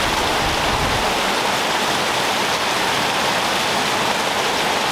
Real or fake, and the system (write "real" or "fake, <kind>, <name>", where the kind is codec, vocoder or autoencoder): real